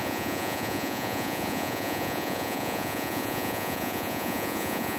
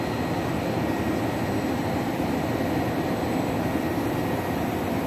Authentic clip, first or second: second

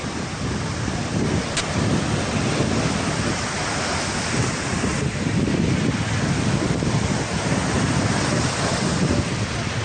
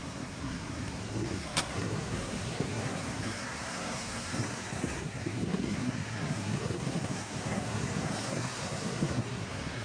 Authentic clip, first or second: first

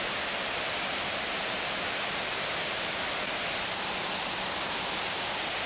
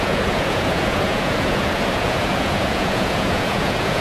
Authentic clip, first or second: first